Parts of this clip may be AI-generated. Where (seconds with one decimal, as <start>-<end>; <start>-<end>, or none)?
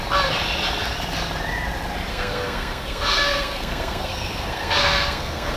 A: 2.1-5.6